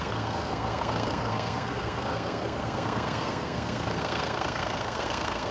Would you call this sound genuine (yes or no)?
no